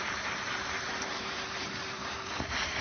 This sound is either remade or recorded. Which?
remade